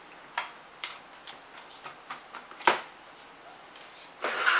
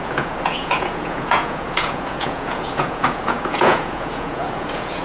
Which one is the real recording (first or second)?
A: first